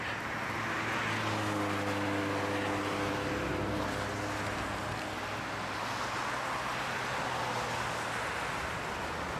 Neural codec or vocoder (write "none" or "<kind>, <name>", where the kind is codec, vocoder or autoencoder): none